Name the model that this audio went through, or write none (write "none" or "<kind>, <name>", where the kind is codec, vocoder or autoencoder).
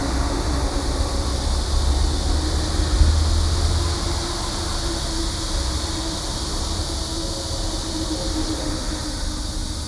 none